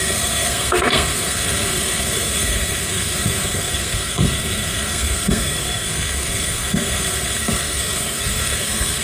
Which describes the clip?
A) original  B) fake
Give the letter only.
B